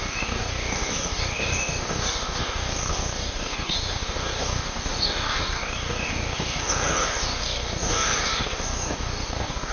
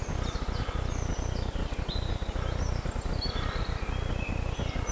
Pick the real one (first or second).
second